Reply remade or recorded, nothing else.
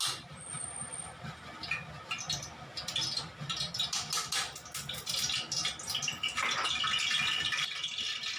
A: recorded